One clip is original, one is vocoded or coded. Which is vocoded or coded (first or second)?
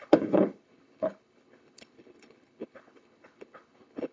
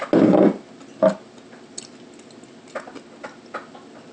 first